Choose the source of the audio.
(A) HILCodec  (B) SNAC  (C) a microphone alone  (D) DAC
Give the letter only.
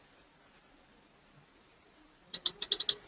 C